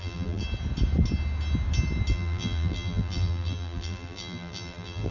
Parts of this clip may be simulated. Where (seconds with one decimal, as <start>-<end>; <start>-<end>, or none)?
0.0-0.4; 2.1-5.1